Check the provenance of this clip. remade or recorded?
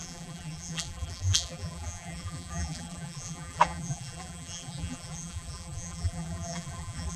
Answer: remade